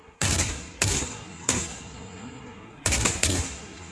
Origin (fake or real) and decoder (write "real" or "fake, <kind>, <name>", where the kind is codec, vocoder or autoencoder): fake, codec, SNAC